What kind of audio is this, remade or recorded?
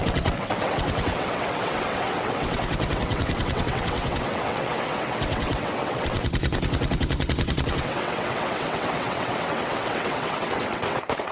remade